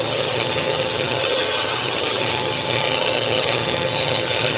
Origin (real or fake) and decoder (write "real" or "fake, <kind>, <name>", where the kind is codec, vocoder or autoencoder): fake, vocoder, HiFi-GAN